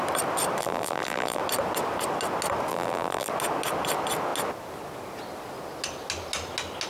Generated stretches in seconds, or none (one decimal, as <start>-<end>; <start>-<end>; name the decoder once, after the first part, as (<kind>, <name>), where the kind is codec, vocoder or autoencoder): 0.6-1.4 (vocoder, BigVGAN v2); 2.7-3.3